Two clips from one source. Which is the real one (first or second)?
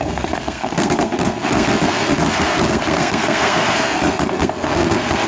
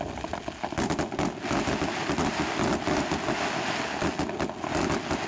second